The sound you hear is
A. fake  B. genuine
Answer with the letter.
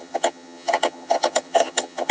A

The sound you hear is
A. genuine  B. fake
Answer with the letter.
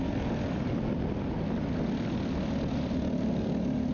A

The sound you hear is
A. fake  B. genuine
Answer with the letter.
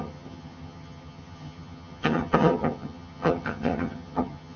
A